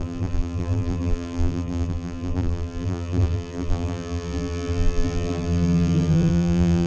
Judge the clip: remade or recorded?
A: remade